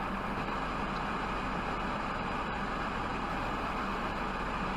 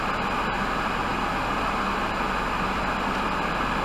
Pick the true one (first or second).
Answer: second